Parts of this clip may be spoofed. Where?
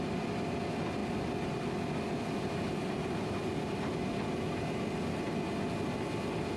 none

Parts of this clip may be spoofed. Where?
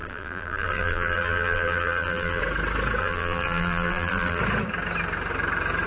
0.0-2.4 (vocoder, BigVGAN v2); 3.0-4.4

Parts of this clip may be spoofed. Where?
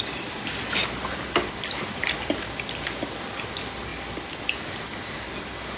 0.8-3.5 (vocoder, BigVGAN v2)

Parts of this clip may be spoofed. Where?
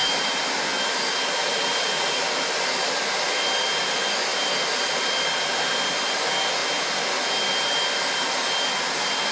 0.0-0.6 (vocoder, BigVGAN v2); 1.4-2.3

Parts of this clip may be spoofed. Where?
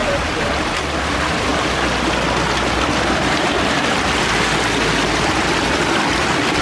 0.0-1.0 (vocoder, BigVGAN v2); 1.5-5.5